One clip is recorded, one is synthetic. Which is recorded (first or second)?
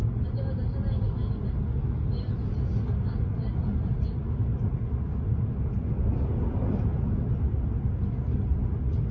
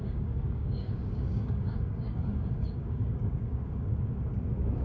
first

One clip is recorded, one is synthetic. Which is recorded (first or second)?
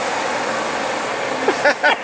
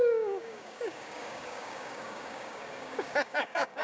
first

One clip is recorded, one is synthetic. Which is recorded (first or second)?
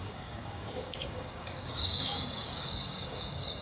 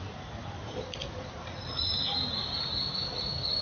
second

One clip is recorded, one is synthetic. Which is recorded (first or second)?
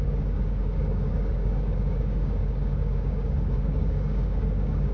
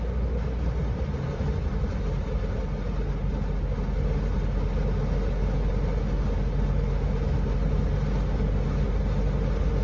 second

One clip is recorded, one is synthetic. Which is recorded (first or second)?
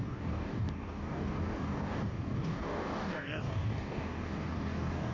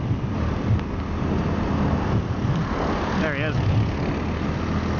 second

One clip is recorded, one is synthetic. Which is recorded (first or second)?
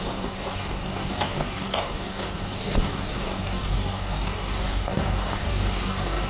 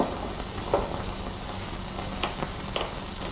second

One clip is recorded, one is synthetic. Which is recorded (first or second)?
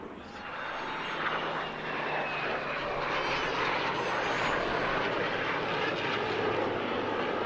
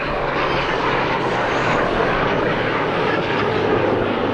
first